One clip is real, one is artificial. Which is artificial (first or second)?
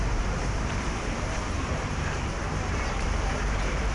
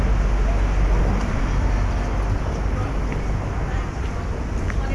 first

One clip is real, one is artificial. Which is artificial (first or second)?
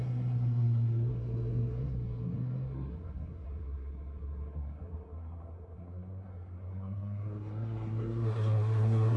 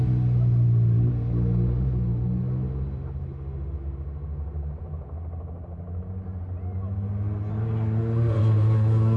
first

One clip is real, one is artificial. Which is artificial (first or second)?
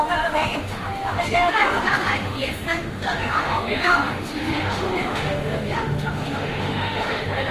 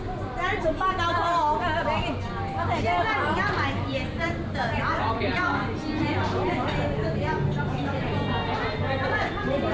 first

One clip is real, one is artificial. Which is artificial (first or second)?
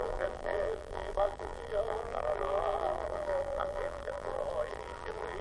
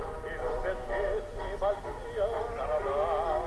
first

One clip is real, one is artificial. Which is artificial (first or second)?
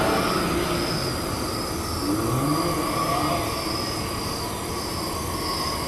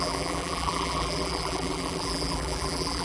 second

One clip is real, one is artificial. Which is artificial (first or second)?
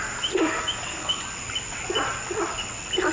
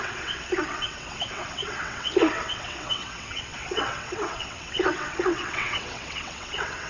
second